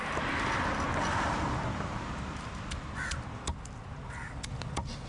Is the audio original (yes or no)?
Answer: yes